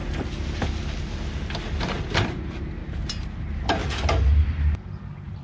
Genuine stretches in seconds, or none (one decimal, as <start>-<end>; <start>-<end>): 0.0-1.8; 2.8-3.4; 3.8-4.5